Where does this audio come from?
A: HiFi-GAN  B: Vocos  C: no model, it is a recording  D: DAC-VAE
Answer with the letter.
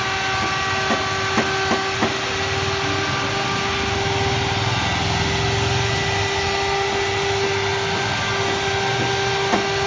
C